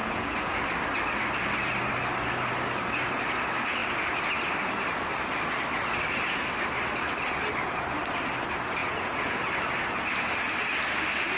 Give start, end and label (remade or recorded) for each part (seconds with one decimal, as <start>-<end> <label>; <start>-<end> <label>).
0.0-0.6 remade; 0.6-8.8 recorded; 8.8-9.5 remade; 9.5-11.4 recorded